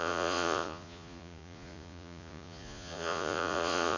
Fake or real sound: fake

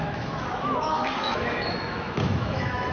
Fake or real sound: fake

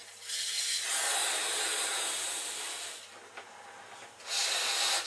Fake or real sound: real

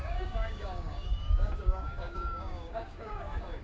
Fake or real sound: fake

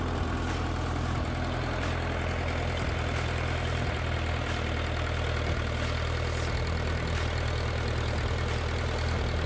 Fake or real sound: real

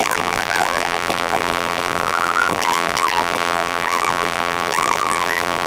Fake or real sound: fake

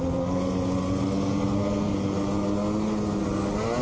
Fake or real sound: real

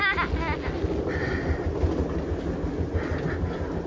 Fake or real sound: real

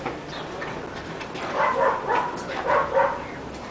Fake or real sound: real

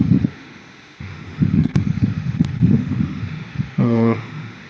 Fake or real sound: fake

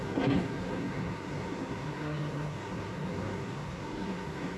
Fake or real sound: fake